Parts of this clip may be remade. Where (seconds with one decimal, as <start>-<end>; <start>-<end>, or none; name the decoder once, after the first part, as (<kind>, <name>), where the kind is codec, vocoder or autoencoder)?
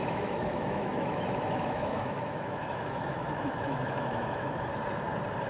0.0-4.7 (autoencoder, DAC-VAE)